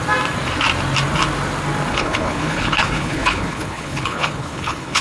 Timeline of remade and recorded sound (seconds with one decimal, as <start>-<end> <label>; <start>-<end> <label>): 0.0-1.9 recorded; 1.9-5.0 remade